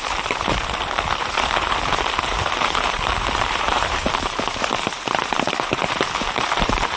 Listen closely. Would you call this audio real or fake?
fake